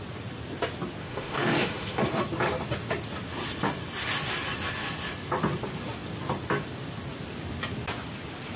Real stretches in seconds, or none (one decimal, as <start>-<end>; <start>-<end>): 0.0-1.0; 2.0-8.6